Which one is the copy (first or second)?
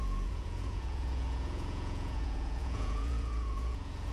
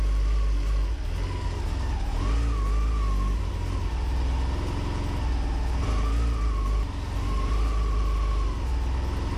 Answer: first